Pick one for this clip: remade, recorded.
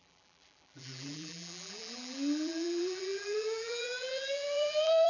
remade